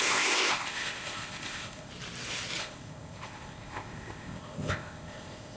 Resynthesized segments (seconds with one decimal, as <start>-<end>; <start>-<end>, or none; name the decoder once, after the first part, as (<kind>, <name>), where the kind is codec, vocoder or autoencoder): 0.0-1.9 (codec, ZipCodec); 2.6-5.6